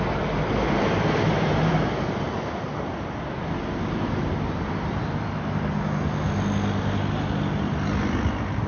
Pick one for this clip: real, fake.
real